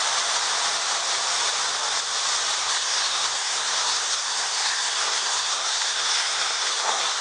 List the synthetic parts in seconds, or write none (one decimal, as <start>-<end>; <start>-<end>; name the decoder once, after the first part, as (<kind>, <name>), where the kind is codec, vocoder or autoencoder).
2.6-7.2 (codec, SNAC)